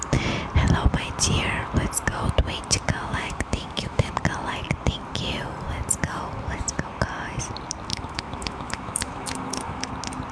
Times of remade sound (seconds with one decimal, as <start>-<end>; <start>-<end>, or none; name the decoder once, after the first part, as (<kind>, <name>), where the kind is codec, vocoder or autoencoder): 3.0-4.1 (autoencoder, DAC-VAE); 7.9-9.9